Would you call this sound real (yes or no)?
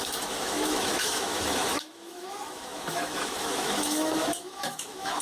no